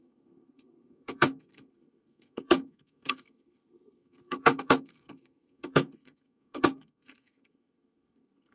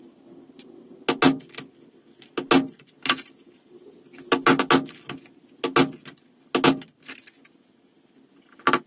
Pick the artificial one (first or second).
first